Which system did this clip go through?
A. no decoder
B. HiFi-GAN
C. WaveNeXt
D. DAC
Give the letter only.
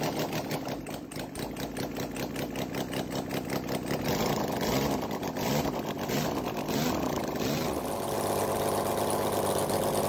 A